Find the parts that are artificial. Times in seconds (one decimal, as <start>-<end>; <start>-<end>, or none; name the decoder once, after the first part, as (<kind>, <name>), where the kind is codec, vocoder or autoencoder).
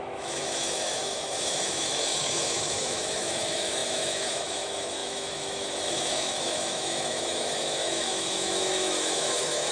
0.0-9.7 (autoencoder, DAC-VAE)